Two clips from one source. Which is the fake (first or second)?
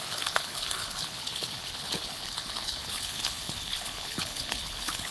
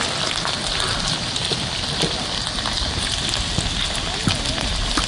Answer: first